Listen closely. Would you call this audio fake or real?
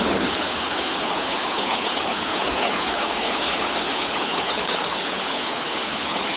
fake